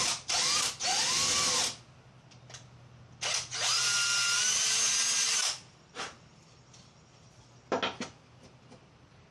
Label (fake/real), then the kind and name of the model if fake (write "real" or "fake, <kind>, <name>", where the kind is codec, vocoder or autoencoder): real